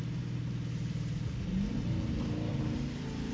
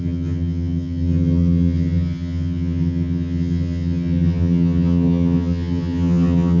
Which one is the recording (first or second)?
first